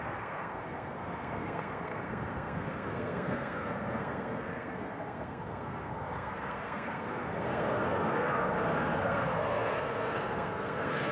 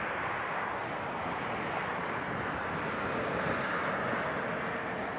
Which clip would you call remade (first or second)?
first